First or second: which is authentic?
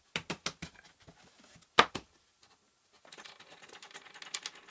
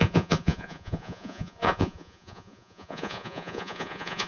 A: first